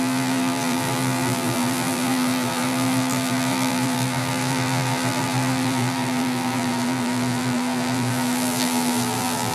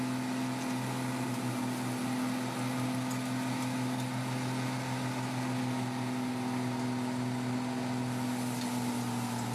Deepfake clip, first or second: first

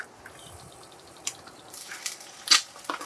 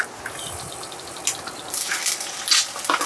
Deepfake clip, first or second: first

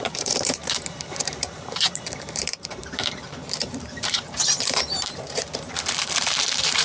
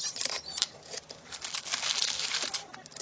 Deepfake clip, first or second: first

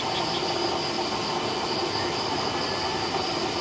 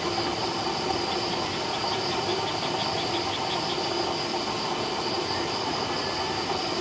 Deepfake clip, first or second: second